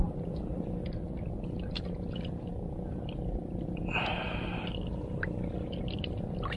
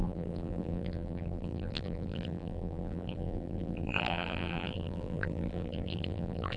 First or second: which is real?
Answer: first